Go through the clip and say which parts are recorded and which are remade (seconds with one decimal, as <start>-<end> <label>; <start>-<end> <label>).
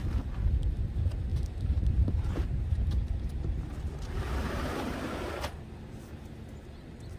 0.0-1.3 recorded; 1.3-5.3 remade; 5.3-7.2 recorded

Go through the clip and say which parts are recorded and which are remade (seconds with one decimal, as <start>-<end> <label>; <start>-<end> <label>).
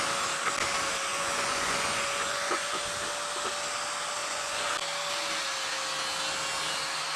0.0-1.1 recorded; 1.1-2.8 remade; 2.8-4.2 recorded; 4.2-4.7 remade; 4.7-7.2 recorded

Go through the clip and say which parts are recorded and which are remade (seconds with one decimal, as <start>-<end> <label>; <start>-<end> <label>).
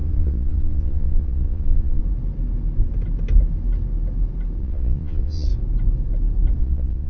0.0-2.0 remade; 2.0-4.6 recorded; 4.6-5.5 remade; 5.5-6.6 recorded; 6.6-7.1 remade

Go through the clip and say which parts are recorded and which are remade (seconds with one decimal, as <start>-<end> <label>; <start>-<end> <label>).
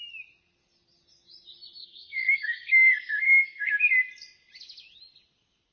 0.0-1.8 recorded; 1.8-3.7 remade; 3.7-5.7 recorded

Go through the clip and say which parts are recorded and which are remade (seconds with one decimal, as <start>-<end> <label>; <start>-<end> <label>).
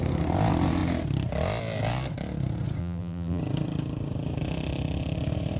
0.0-2.8 recorded; 2.8-3.4 remade; 3.4-5.6 recorded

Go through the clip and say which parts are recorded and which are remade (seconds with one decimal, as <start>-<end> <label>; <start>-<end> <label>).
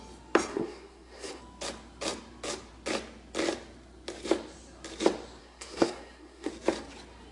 0.0-0.5 recorded; 0.5-1.4 remade; 1.4-5.4 recorded; 5.4-6.5 remade; 6.5-7.3 recorded